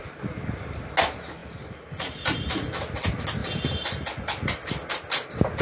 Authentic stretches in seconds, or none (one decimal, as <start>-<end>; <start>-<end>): 0.0-5.6